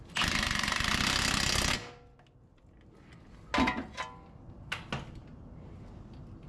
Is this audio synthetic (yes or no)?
no